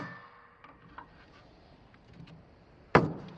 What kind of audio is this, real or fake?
fake